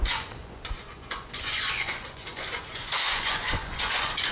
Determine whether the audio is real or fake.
fake